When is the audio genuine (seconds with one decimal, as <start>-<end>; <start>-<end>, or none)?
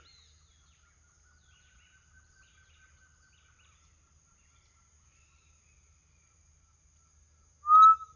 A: 0.0-8.2